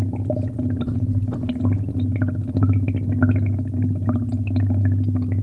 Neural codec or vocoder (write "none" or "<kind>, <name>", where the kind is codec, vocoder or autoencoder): none